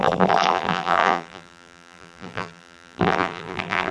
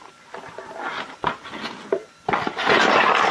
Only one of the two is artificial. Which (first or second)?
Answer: first